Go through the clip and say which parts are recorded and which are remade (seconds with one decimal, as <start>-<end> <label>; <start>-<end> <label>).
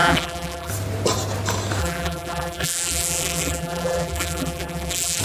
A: 0.0-0.7 remade; 0.7-1.8 recorded; 1.8-5.2 remade